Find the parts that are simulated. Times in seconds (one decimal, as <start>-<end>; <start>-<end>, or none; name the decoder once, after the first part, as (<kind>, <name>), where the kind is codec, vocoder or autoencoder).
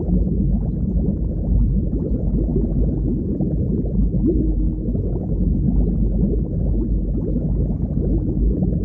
none